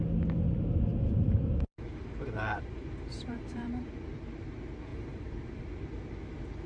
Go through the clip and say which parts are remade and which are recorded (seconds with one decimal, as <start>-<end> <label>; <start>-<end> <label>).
0.0-0.9 recorded; 0.9-3.9 remade; 3.9-4.9 recorded; 4.9-5.6 remade; 5.6-6.7 recorded